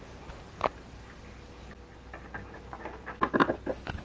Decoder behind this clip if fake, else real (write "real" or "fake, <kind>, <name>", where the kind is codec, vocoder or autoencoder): real